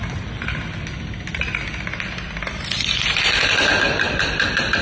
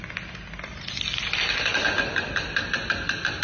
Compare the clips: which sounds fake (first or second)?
first